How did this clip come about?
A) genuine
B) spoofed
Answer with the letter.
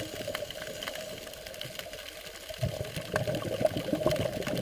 A